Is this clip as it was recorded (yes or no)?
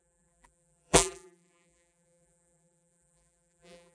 no